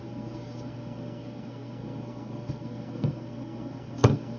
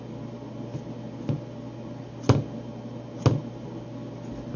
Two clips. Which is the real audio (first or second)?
second